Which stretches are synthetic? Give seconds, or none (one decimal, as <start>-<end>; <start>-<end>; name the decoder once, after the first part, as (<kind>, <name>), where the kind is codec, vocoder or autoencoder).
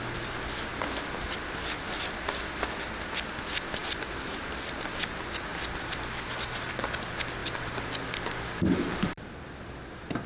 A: none